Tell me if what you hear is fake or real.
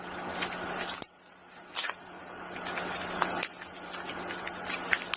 real